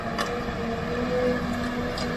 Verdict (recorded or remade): recorded